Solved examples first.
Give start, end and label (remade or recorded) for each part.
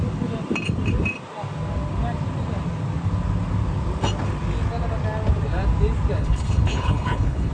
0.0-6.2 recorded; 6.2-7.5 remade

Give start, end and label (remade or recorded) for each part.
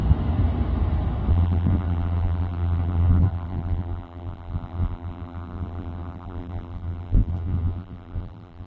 0.0-1.3 recorded; 1.3-8.7 remade